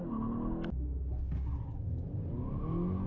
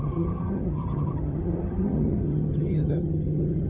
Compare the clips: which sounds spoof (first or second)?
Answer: second